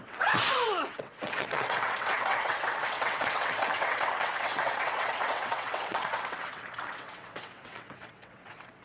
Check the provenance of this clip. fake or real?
fake